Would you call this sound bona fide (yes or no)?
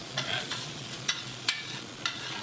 no